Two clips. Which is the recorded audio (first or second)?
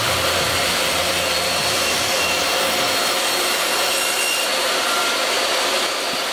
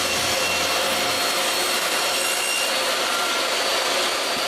second